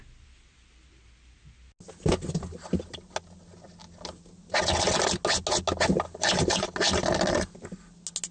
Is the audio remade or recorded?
recorded